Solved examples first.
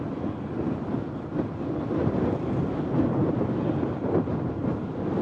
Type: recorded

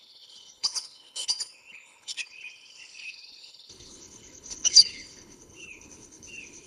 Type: remade